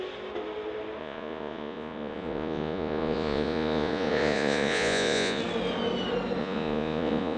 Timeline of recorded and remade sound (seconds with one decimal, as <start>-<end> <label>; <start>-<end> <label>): 0.0-1.0 recorded; 1.0-5.4 remade; 5.4-6.4 recorded; 6.4-7.4 remade